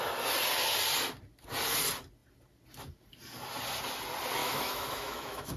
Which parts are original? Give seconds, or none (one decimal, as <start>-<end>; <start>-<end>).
0.0-4.4